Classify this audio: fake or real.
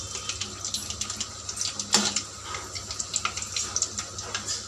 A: real